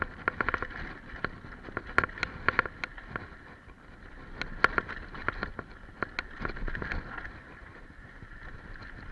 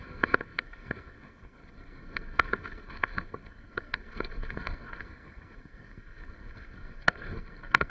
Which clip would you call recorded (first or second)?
first